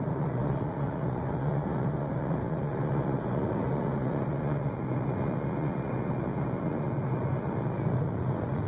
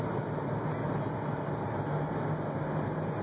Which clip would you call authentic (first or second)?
second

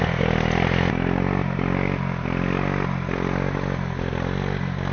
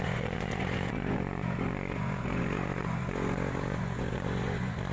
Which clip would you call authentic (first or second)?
first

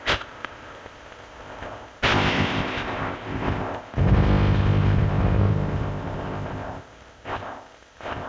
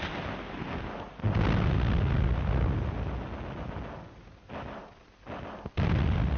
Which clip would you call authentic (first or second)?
second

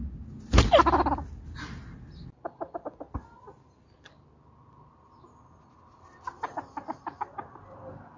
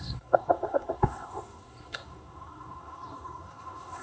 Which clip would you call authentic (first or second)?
first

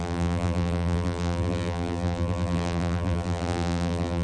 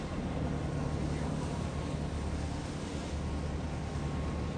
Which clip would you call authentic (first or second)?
second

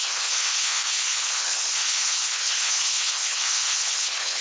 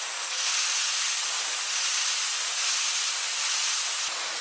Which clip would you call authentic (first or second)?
second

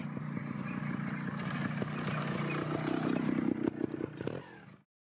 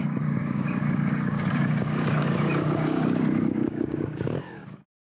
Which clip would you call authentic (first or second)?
first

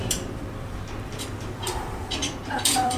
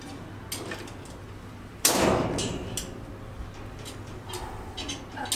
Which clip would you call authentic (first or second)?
second